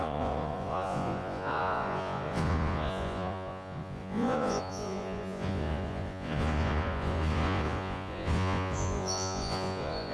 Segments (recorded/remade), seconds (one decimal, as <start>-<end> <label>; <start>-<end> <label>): 0.0-10.1 remade